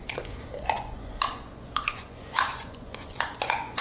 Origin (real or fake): fake